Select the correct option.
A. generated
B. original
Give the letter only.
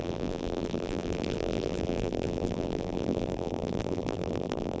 A